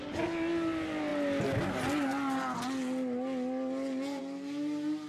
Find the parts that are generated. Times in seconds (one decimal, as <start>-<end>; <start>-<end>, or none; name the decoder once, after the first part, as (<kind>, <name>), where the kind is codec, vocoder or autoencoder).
none